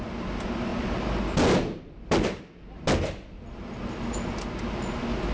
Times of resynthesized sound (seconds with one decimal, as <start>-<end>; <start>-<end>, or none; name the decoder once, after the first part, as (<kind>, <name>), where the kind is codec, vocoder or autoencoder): none